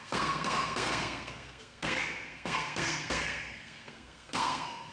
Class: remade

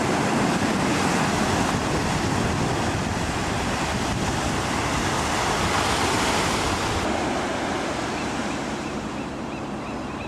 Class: recorded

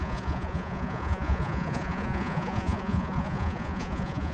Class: remade